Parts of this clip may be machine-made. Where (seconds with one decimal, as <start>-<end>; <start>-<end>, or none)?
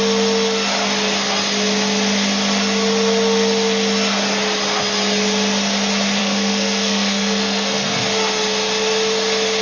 6.2-8.0